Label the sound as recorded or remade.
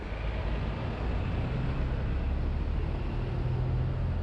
recorded